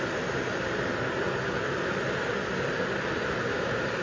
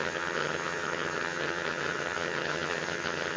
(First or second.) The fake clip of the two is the second